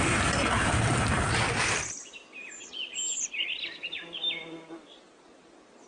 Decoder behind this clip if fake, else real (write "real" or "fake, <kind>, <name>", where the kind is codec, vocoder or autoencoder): real